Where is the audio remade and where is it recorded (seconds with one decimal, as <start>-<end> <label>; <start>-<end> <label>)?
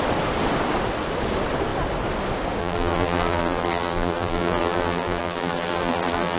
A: 0.0-2.6 recorded; 2.6-6.4 remade